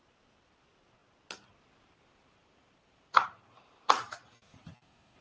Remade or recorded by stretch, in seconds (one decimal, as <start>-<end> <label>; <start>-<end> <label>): 0.0-2.1 recorded; 2.1-5.2 remade